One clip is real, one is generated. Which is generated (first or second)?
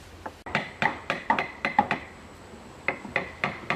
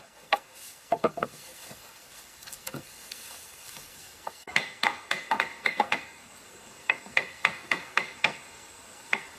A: second